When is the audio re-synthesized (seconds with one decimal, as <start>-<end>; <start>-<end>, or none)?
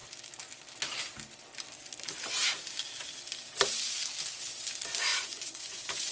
5.1-6.1